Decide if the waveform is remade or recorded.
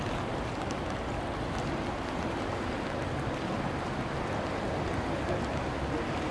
recorded